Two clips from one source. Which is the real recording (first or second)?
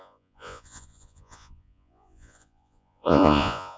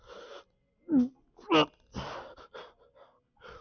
second